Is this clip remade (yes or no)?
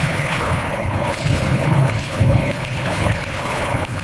yes